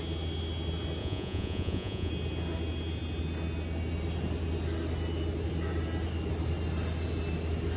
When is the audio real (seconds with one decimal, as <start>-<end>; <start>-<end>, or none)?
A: 0.0-1.0; 2.1-7.8